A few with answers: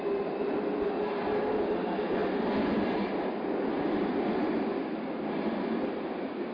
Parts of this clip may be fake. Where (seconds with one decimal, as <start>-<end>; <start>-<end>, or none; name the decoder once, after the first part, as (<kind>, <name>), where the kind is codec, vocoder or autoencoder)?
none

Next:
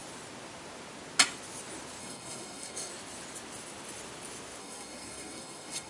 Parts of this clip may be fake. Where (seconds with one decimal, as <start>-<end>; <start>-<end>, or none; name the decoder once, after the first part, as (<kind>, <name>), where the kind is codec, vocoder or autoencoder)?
2.0-2.9 (codec, SNAC); 4.6-5.9

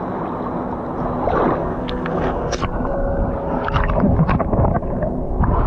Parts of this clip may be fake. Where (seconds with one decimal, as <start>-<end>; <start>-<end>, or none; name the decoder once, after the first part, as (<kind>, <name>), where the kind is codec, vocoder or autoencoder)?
1.6-2.6 (codec, SNAC)